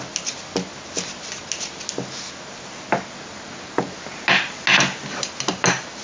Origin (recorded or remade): recorded